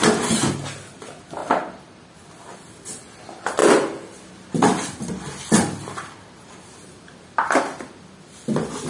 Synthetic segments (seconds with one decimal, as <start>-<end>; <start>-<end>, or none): none